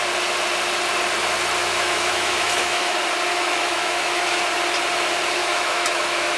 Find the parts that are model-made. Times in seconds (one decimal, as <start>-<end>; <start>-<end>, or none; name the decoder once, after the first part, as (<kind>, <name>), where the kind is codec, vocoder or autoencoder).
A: 1.6-2.9 (autoencoder, DAC-VAE); 3.3-4.4; 5.4-6.4